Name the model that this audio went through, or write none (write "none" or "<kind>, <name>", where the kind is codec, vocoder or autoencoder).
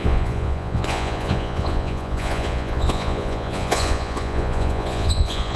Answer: vocoder, Vocos